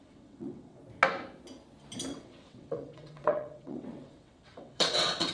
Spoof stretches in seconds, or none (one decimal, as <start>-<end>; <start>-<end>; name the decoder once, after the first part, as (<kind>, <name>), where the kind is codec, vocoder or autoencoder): 0.0-0.8 (vocoder, WaveNeXt); 2.1-5.3